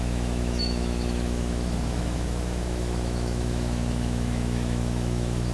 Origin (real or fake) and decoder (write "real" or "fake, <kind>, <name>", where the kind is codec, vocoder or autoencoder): fake, autoencoder, DAC-VAE